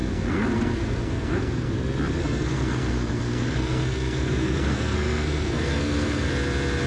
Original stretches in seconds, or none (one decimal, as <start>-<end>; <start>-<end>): 1.7-2.2; 6.3-6.9